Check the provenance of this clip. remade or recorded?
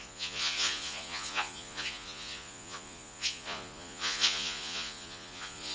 remade